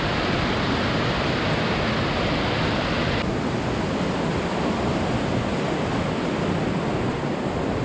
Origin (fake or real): real